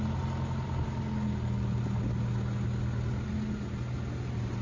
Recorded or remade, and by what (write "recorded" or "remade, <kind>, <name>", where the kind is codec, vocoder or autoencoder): recorded